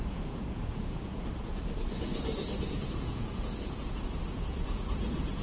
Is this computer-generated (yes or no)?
yes